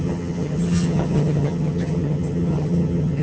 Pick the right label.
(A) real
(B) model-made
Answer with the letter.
B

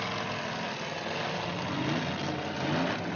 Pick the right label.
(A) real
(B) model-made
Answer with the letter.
A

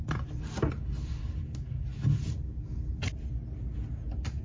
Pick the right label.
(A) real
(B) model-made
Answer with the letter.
A